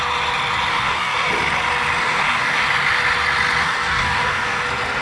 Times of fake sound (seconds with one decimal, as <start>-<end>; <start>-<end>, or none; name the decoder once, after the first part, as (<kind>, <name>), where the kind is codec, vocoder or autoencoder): 0.7-1.3 (codec, DAC); 2.0-2.6; 3.6-4.6

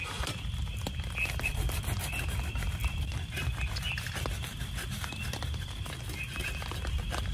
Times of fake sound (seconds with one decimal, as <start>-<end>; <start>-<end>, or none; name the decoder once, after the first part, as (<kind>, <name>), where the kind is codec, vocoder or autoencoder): none

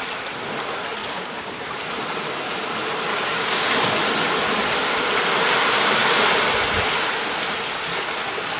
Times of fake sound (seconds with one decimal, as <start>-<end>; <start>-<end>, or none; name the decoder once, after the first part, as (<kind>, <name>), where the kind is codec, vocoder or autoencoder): 1.0-1.7 (codec, DAC); 3.1-4.0

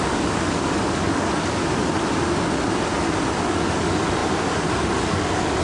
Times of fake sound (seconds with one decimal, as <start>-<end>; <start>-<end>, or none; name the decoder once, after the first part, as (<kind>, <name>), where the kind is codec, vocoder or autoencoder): 0.0-1.6 (codec, DAC); 3.5-5.6

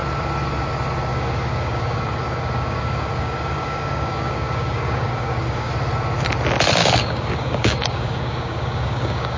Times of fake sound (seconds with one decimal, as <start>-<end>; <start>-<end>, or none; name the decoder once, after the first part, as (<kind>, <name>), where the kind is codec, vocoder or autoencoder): 1.1-5.7 (codec, DAC); 6.8-9.4

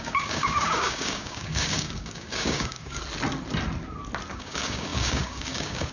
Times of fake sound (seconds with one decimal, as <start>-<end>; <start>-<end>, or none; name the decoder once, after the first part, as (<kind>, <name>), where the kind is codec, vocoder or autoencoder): 0.0-3.0 (codec, DAC); 4.3-5.9